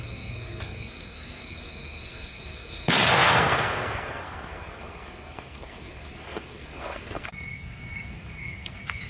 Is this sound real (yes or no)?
no